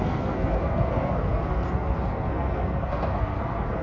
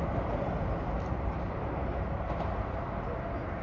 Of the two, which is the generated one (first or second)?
first